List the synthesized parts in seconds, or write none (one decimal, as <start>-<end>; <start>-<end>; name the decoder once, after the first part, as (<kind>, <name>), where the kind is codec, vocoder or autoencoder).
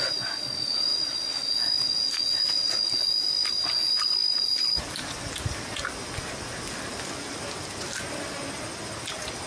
none